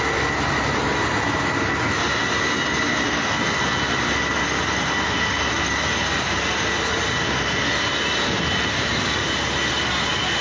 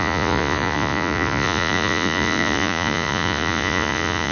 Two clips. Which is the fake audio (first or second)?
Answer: second